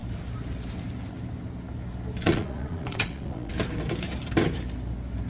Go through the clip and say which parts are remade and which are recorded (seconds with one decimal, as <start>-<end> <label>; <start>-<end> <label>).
0.0-2.2 recorded; 2.2-3.5 remade; 3.5-5.3 recorded